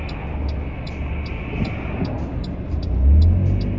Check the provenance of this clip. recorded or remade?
recorded